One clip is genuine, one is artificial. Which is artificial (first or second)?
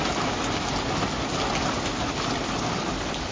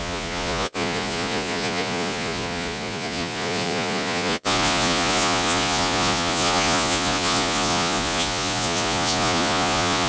second